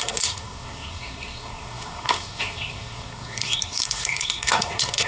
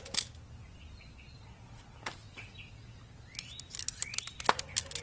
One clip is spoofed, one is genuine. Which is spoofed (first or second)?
first